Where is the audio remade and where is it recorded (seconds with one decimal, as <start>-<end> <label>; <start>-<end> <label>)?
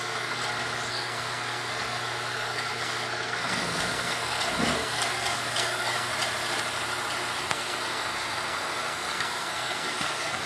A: 0.0-0.4 remade; 0.4-0.9 recorded; 0.9-6.1 remade; 6.1-7.4 recorded; 7.4-10.5 remade